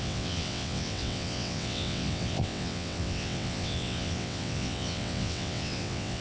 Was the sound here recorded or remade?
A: remade